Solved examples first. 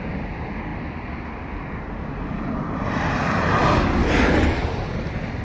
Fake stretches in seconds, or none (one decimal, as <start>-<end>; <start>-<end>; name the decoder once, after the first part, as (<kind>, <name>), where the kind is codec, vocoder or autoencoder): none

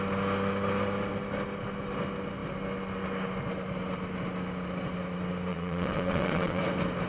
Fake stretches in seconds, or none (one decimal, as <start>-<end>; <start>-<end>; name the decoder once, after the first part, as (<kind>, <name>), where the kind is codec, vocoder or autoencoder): 5.5-6.6 (vocoder, WaveNeXt)

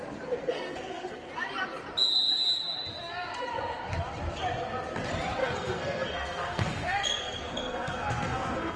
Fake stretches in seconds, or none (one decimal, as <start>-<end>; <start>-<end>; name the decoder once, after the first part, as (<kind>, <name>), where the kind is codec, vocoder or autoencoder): 0.4-1.3 (codec, SNAC); 5.4-8.8

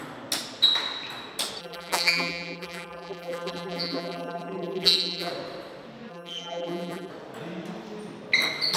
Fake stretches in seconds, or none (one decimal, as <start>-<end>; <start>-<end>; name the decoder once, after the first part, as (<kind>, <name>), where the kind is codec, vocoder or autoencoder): 1.6-5.3 (vocoder, BigVGAN v2); 6.1-7.1